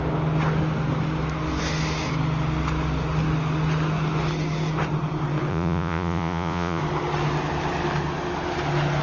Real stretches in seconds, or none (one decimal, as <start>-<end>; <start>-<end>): 0.0-5.5; 6.8-9.0